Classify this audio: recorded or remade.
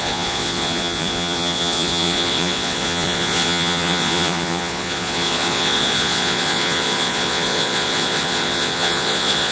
remade